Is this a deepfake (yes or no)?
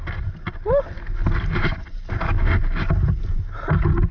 no